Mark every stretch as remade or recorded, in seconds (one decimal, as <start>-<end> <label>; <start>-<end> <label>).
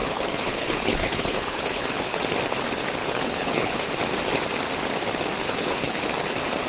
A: 0.0-2.2 remade; 2.2-3.0 recorded; 3.0-3.9 remade; 3.9-5.4 recorded; 5.4-6.0 remade; 6.0-6.7 recorded